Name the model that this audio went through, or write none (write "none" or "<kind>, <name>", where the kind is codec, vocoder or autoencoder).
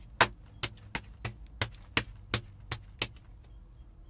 none